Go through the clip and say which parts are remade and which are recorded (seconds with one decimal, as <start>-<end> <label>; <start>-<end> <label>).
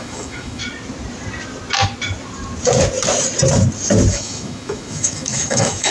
0.0-0.6 remade; 0.6-4.1 recorded; 4.1-5.9 remade